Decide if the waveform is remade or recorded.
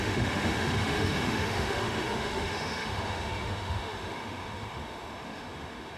remade